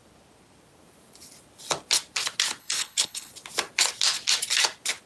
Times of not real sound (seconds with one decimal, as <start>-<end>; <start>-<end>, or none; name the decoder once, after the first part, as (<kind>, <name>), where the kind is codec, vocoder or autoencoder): 2.6-3.3 (codec, HILCodec)